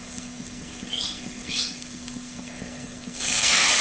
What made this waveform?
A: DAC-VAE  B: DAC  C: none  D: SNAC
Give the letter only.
D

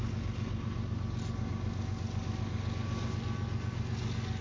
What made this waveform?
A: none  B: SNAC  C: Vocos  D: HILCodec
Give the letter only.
A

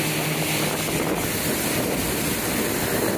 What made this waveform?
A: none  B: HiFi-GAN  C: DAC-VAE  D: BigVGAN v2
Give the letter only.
A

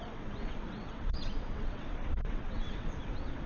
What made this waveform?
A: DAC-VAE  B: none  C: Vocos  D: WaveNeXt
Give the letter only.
D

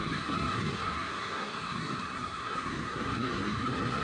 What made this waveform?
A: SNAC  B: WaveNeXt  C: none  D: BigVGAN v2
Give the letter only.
A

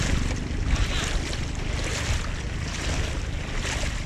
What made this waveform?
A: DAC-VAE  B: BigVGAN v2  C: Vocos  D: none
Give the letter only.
D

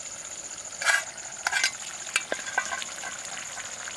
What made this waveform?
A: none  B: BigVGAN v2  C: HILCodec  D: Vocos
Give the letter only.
A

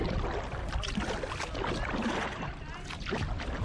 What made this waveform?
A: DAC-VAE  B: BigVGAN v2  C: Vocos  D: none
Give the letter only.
D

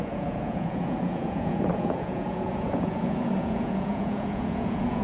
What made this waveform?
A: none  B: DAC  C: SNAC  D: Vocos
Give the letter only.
D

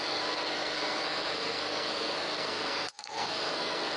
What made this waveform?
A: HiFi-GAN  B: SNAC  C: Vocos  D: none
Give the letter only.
B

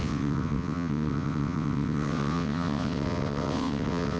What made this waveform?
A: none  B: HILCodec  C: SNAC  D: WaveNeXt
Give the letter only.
D